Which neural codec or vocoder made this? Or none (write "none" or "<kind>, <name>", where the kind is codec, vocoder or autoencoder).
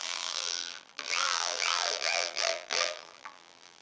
vocoder, BigVGAN v2